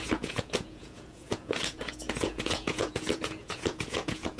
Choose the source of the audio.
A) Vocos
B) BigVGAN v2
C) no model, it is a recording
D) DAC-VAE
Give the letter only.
A